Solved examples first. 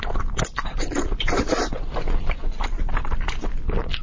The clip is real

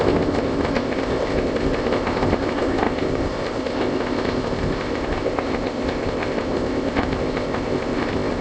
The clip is fake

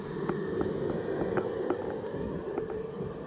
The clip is real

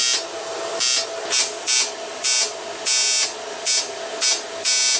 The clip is real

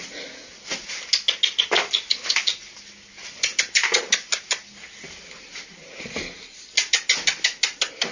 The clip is real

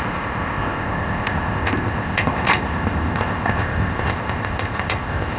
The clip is fake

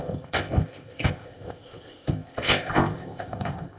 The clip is fake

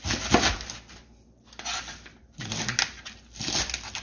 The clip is real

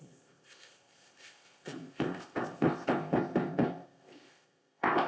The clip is fake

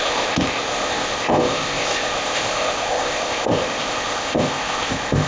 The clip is fake